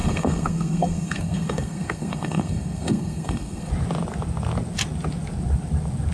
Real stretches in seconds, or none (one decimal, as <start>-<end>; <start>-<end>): 3.7-6.1